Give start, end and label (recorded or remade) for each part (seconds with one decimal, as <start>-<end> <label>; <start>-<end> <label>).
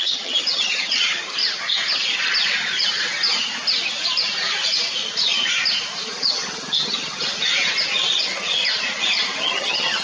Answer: 0.0-1.4 remade; 1.4-6.0 recorded; 6.0-7.5 remade; 7.5-8.2 recorded; 8.2-8.6 remade; 8.6-9.4 recorded; 9.4-10.0 remade